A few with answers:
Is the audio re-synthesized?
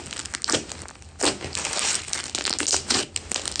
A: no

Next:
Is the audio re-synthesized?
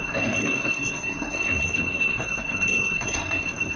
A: yes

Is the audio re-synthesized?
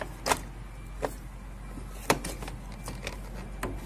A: no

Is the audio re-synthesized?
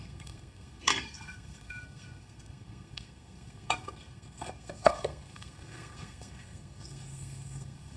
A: yes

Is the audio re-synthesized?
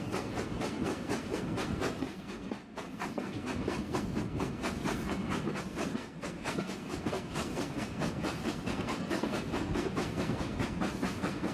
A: yes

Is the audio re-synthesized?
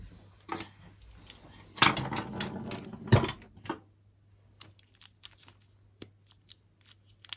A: no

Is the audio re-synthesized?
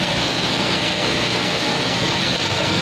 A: yes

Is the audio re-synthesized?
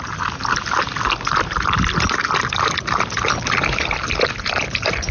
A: no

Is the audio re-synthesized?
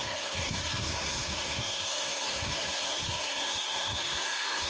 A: yes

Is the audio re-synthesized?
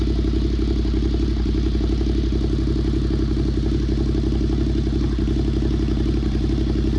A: no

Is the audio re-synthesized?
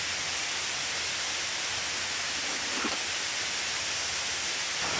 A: no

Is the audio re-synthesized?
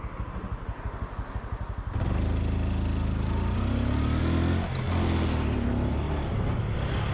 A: no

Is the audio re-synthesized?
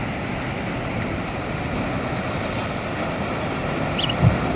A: no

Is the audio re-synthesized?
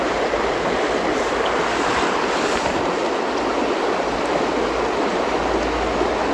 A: no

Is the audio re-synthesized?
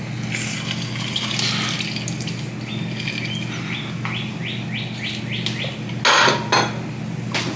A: no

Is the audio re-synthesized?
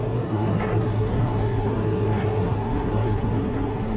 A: yes